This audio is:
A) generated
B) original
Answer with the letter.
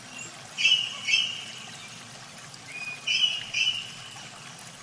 B